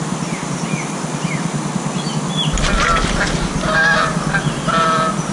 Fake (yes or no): no